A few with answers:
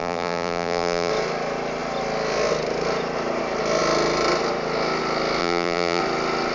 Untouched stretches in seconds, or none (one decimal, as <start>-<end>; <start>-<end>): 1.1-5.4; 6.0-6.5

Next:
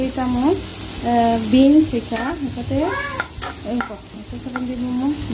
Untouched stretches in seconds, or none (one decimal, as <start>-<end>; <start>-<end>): 0.0-5.3

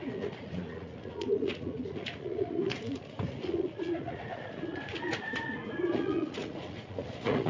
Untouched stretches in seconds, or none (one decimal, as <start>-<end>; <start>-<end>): none